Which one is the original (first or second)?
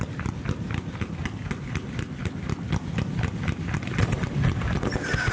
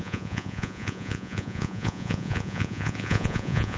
first